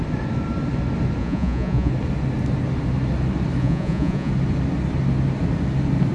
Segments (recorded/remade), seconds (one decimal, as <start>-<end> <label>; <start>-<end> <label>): 0.0-1.2 recorded; 1.2-1.9 remade; 1.9-3.6 recorded; 3.6-4.3 remade; 4.3-6.1 recorded